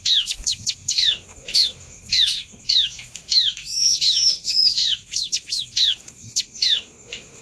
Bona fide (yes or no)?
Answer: no